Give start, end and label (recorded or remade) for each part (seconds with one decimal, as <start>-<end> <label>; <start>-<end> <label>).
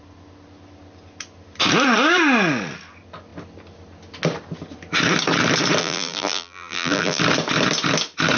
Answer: 0.0-5.8 recorded; 5.8-7.2 remade; 7.2-8.4 recorded